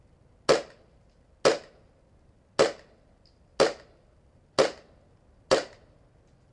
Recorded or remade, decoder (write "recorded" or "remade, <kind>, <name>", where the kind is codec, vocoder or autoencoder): recorded